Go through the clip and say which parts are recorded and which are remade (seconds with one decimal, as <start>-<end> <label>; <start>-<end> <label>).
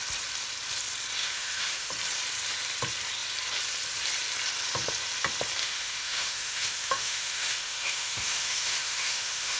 0.0-1.2 recorded; 1.2-1.9 remade; 1.9-5.6 recorded; 5.6-9.6 remade